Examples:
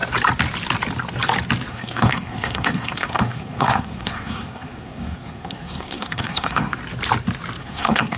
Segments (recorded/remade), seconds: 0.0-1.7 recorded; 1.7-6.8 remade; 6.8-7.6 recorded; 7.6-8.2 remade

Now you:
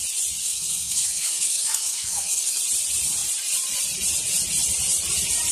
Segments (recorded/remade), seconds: 0.0-0.4 recorded; 0.4-2.6 remade; 2.6-5.5 recorded

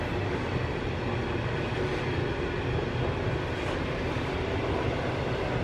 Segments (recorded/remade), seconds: 0.0-5.6 recorded

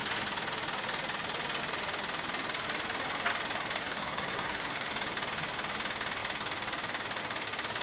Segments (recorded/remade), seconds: 0.0-3.8 recorded; 3.8-4.9 remade; 4.9-7.8 recorded

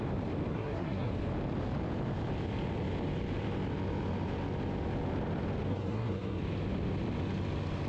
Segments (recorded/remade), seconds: 0.0-0.5 recorded; 0.5-1.1 remade; 1.1-5.7 recorded; 5.7-6.4 remade; 6.4-7.9 recorded